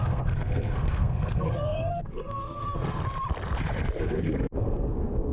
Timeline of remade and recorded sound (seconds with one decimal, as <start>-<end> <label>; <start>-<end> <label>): 0.0-3.0 remade; 3.0-4.0 recorded; 4.0-5.3 remade